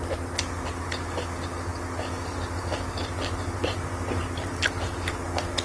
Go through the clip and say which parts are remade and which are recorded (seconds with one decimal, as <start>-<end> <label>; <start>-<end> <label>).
0.0-5.6 recorded